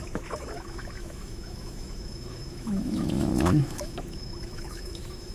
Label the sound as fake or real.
fake